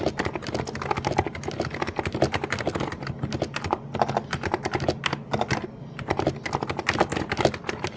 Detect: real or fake real